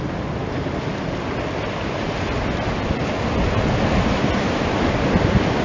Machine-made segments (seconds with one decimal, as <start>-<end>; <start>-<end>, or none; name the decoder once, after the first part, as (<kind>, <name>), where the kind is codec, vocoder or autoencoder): none